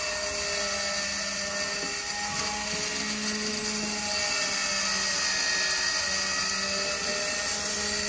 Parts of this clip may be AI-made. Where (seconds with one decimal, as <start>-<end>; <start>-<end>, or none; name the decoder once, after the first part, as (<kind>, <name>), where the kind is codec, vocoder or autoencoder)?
none